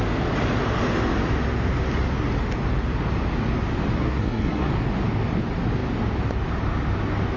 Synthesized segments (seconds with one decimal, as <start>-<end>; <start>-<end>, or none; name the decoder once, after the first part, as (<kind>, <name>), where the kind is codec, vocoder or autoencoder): 4.0-4.7 (codec, SNAC)